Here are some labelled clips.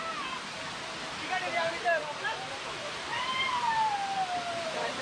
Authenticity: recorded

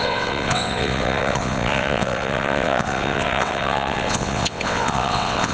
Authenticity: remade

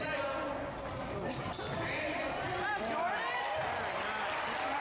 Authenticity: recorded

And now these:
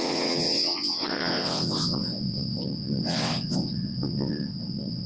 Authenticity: remade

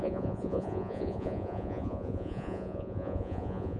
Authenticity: remade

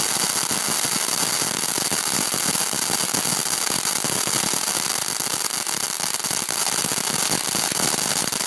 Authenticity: recorded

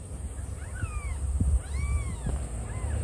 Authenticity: recorded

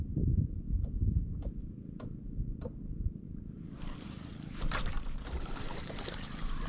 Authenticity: remade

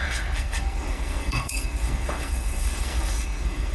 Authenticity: remade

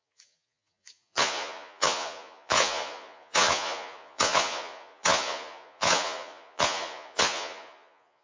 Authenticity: remade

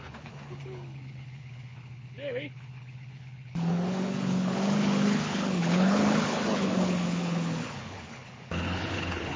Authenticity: remade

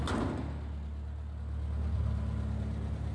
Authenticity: recorded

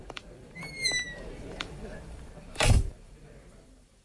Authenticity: remade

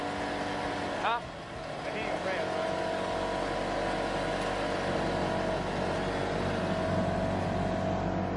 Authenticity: recorded